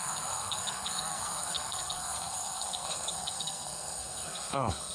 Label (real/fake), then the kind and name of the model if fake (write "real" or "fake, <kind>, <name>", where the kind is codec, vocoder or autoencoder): fake, codec, SNAC